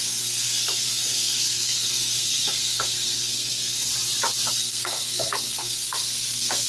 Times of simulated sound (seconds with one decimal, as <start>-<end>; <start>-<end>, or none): 0.0-3.9; 4.5-6.7